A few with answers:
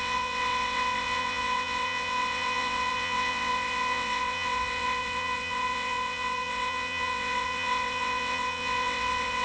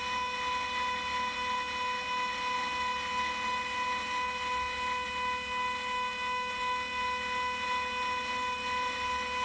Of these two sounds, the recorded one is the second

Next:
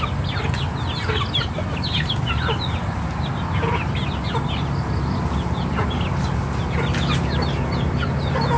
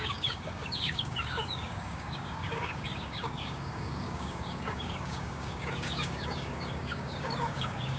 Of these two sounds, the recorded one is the first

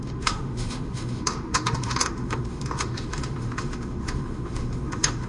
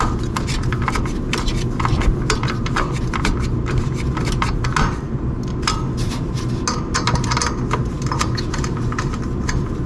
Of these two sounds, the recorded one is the second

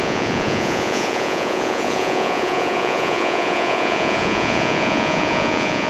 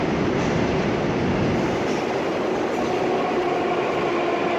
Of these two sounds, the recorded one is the second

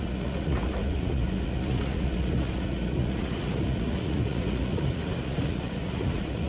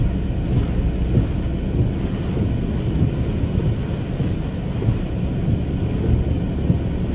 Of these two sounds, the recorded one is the second